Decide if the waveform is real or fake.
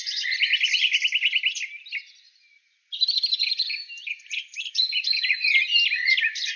real